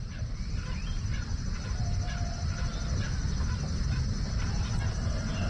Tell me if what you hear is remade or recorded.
recorded